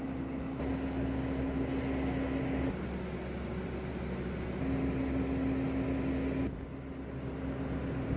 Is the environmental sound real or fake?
real